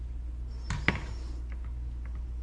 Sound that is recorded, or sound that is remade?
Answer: recorded